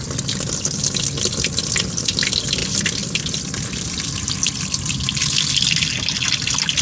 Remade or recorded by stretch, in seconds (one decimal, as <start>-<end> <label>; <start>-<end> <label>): 0.0-6.8 recorded